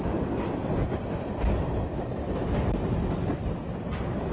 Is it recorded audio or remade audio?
recorded